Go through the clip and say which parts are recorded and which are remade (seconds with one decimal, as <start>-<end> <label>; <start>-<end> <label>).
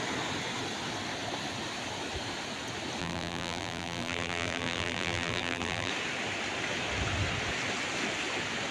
0.0-3.0 recorded; 3.0-5.9 remade; 5.9-8.7 recorded